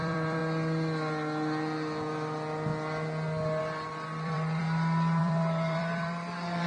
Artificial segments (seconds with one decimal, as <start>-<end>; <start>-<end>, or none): 0.0-0.4; 3.6-4.6; 5.2-6.7